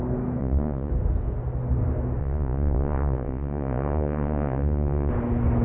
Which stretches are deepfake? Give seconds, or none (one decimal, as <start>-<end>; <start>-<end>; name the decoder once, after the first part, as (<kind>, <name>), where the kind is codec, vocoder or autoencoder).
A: 0.4-0.9 (vocoder, Vocos); 2.2-5.1